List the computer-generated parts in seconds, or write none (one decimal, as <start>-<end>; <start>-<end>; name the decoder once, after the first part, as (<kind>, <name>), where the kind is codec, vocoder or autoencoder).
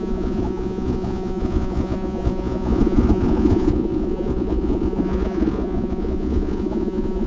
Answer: 0.0-7.3 (vocoder, Vocos)